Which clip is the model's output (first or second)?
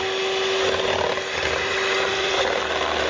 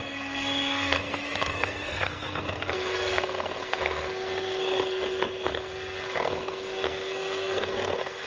second